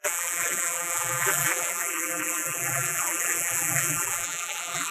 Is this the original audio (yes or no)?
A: no